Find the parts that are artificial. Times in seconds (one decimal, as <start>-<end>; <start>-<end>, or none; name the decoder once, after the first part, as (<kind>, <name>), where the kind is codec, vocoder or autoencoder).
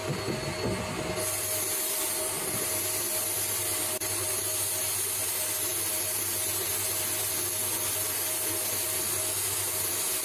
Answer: none